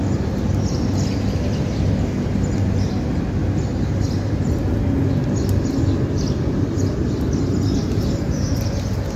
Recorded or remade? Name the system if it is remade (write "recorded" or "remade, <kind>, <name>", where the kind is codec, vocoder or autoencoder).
recorded